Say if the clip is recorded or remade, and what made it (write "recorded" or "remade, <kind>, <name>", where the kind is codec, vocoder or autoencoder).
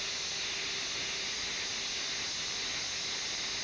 recorded